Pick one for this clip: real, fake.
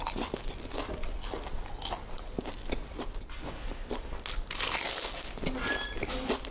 real